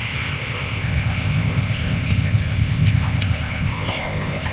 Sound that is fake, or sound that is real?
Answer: fake